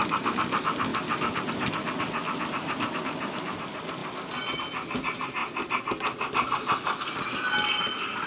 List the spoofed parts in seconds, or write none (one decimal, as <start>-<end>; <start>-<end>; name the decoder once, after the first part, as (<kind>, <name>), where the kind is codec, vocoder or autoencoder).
0.9-1.5 (vocoder, BigVGAN v2)